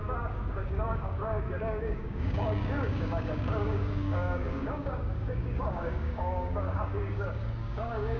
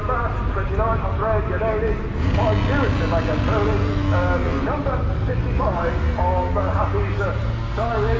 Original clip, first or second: second